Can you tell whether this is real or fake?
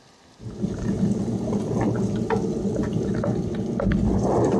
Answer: real